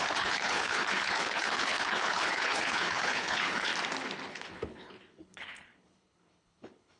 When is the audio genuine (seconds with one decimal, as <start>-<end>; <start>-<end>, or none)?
3.7-4.3

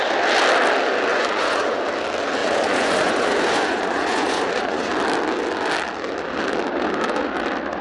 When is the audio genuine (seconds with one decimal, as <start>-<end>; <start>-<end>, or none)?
0.0-1.1; 1.8-2.4; 4.9-7.8